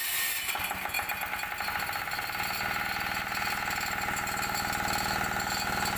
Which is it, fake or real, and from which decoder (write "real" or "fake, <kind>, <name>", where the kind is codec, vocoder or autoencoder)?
real